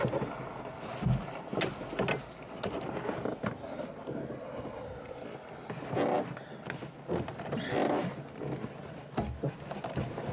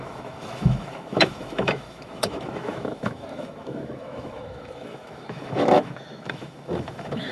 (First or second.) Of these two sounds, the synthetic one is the second